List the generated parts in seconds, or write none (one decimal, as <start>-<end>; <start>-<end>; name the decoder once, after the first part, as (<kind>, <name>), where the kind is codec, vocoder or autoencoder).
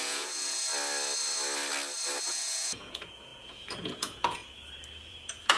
0.0-0.7 (vocoder, Vocos); 2.3-4.4; 5.1-5.6